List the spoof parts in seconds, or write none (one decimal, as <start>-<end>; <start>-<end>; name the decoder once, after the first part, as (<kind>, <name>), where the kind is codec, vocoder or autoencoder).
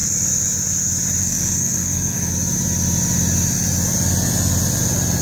1.2-2.3 (codec, SNAC)